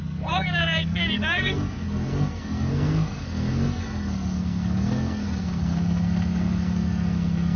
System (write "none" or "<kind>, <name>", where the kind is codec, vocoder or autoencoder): codec, SNAC